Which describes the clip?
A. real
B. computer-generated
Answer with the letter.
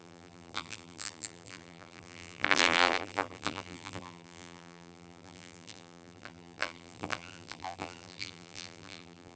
B